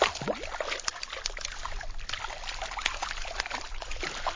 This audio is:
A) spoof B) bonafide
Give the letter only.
B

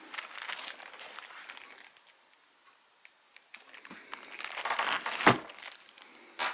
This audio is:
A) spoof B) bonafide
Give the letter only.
B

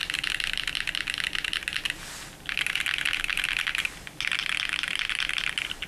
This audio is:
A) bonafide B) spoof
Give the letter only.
A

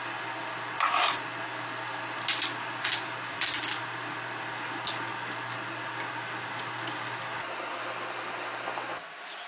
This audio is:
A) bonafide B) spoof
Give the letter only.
A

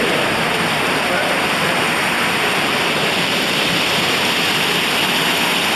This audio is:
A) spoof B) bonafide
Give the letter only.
B